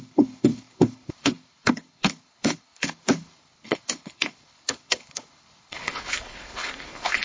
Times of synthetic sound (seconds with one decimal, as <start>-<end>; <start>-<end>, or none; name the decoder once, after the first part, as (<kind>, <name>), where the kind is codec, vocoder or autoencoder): 0.0-7.2 (codec, HILCodec)

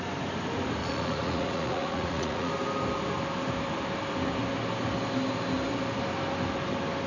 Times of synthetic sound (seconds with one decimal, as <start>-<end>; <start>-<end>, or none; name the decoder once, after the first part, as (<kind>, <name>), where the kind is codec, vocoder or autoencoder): 0.8-2.5 (vocoder, Vocos)